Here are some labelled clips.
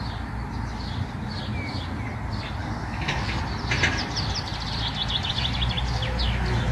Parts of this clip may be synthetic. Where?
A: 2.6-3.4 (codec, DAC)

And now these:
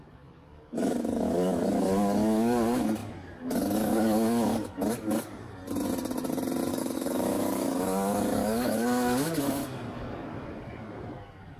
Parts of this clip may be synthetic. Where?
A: 0.0-5.6 (codec, DAC); 6.7-11.6

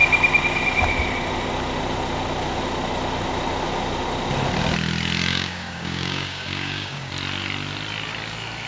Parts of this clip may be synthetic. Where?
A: 5.3-7.1 (codec, DAC)